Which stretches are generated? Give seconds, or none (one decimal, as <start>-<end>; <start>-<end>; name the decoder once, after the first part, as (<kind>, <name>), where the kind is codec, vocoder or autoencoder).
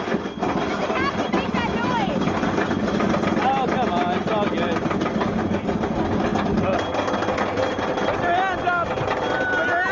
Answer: none